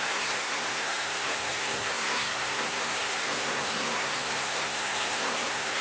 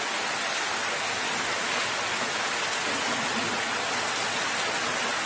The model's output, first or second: first